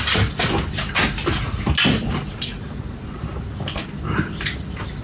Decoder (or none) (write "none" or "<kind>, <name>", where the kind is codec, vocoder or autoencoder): none